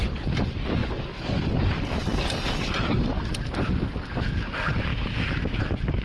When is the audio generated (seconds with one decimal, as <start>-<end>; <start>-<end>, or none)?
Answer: 4.9-5.6